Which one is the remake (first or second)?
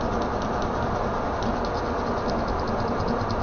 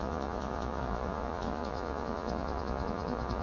second